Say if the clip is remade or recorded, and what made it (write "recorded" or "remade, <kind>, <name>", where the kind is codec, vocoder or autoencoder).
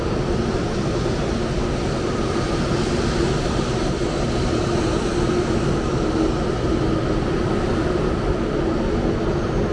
recorded